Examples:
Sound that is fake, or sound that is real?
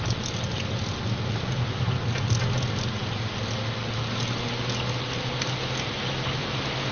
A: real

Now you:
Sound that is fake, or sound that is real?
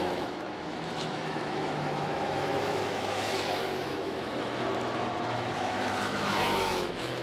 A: fake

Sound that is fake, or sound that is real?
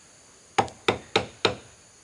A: real